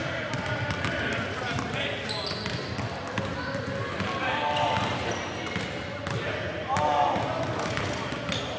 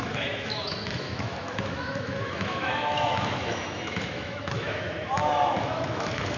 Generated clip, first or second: second